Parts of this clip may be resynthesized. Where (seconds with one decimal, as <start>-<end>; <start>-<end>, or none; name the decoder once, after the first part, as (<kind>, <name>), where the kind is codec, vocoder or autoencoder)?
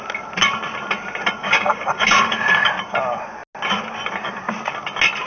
1.4-2.7 (codec, DAC)